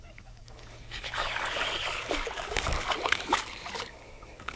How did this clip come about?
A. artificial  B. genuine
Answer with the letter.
A